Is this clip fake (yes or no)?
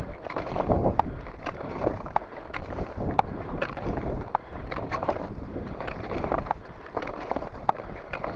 yes